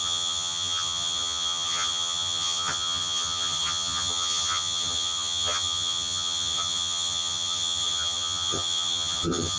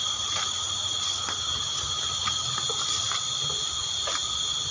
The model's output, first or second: first